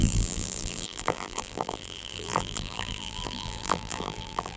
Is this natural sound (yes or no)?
no